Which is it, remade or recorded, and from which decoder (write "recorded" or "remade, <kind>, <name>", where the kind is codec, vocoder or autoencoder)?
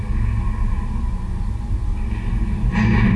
recorded